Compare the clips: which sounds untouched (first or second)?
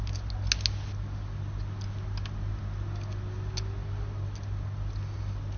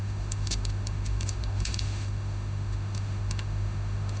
first